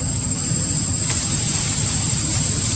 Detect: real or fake fake